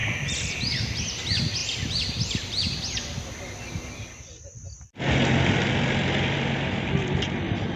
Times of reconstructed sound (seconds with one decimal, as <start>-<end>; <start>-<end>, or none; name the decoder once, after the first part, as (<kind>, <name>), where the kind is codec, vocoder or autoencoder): none